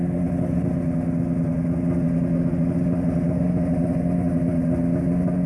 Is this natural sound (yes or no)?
yes